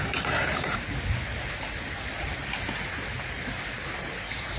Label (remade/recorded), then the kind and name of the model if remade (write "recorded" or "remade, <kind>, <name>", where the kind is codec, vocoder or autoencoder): recorded